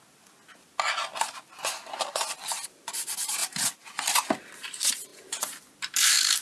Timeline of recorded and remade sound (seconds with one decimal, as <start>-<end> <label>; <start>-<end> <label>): 0.0-6.4 recorded